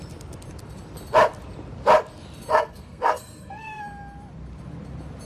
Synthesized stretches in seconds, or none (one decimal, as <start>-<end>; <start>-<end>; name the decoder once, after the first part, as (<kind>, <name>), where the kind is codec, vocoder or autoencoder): 2.5-3.8 (codec, SNAC)